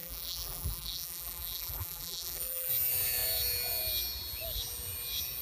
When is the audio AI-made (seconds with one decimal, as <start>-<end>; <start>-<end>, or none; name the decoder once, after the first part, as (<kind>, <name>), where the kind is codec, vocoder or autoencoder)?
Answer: 0.0-2.7 (vocoder, BigVGAN v2)

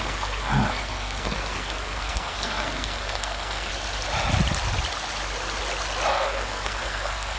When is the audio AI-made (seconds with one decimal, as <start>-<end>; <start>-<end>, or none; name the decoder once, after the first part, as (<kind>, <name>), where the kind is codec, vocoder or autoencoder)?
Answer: 0.0-3.7 (codec, SNAC); 6.1-7.4

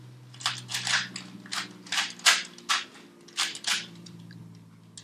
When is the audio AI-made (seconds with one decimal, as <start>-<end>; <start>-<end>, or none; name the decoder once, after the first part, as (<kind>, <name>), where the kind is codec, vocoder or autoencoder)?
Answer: 3.5-4.4 (vocoder, BigVGAN v2)

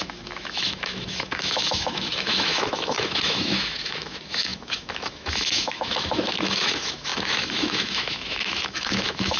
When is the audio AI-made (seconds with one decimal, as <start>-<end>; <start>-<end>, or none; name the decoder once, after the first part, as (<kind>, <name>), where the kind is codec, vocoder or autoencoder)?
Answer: 0.0-9.4 (autoencoder, DAC-VAE)

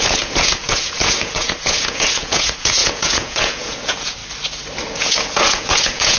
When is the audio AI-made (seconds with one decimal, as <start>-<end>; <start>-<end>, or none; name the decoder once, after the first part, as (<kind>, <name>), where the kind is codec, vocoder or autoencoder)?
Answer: 0.0-4.2 (vocoder, Vocos); 4.9-6.2

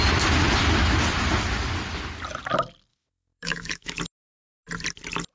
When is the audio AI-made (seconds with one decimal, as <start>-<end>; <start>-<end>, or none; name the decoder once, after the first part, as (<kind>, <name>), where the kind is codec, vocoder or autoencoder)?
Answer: 2.9-4.0 (autoencoder, DAC-VAE)

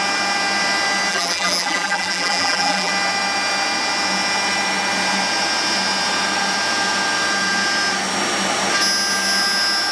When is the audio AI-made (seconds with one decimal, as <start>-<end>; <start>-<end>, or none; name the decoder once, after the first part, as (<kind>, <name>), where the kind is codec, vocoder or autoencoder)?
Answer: 1.1-2.9 (vocoder, BigVGAN v2)